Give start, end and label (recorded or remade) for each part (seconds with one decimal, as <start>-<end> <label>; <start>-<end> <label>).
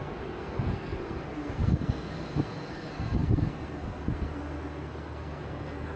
0.0-6.0 remade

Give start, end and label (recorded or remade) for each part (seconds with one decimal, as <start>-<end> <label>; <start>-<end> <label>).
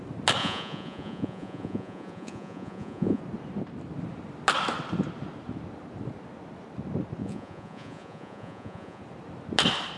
0.0-0.4 recorded; 0.4-3.2 remade; 3.2-7.2 recorded; 7.2-9.0 remade; 9.0-10.0 recorded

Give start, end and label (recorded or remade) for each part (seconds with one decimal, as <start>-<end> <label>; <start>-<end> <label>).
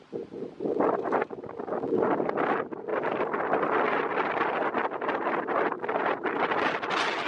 0.0-7.3 recorded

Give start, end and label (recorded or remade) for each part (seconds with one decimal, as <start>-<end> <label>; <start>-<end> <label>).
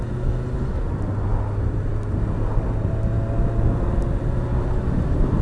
0.0-5.4 recorded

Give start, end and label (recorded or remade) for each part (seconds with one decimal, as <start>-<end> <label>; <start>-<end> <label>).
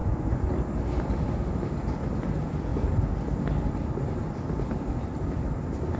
0.0-0.5 remade; 0.5-6.0 recorded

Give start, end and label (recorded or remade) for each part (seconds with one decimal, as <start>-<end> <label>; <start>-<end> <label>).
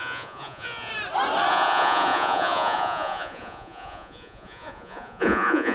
0.0-0.9 remade; 0.9-1.5 recorded; 1.5-5.7 remade